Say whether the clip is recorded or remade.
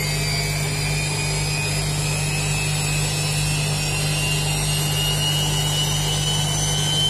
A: recorded